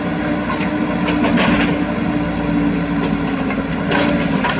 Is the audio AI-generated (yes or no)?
no